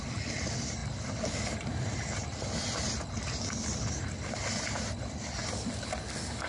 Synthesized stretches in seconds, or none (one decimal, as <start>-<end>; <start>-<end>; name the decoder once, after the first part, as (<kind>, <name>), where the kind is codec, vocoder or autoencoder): none